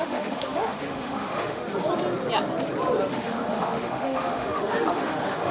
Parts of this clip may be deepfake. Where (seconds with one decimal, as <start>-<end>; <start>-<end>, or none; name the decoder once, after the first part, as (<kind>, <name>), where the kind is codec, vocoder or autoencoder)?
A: 0.0-1.6 (autoencoder, DAC-VAE); 3.1-5.5